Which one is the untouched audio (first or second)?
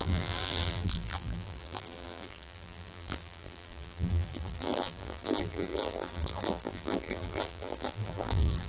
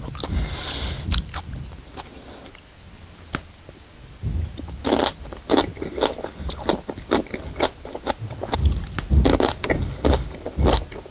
second